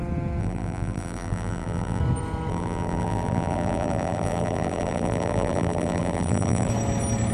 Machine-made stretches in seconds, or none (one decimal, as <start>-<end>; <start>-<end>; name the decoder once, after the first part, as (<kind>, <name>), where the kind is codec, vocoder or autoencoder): 0.4-2.0 (vocoder, BigVGAN v2); 2.5-6.7